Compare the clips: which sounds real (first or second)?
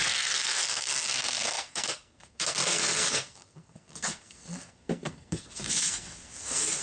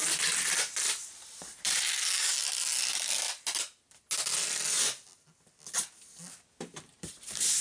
second